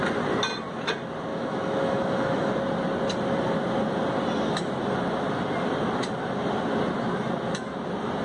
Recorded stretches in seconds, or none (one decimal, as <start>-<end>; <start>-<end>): 0.0-1.3; 2.5-8.2